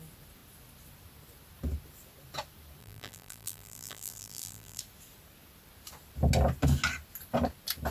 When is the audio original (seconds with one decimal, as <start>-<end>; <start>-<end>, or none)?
0.0-2.8; 4.8-7.9